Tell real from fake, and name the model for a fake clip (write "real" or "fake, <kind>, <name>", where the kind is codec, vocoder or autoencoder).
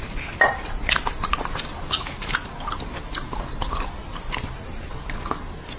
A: real